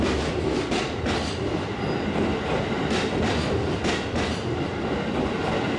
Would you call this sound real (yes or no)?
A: yes